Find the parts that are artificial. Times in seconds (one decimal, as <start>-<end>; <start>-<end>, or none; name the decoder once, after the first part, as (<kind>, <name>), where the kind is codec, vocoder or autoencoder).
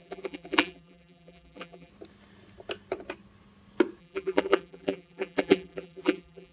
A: 0.0-1.9 (vocoder, BigVGAN v2); 4.0-6.5